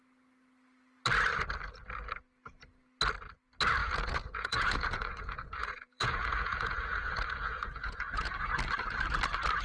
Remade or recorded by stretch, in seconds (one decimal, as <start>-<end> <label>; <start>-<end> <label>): 0.0-3.8 recorded; 3.8-8.5 remade; 8.5-9.6 recorded